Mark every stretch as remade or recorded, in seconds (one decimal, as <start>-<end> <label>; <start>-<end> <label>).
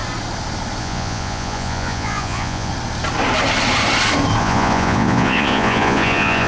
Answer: 0.0-0.8 recorded; 0.8-2.7 remade; 2.7-4.4 recorded; 4.4-6.5 remade